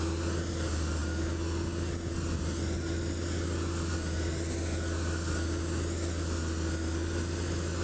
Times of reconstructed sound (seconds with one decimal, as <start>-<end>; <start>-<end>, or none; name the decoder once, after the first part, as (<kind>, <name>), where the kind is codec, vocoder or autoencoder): none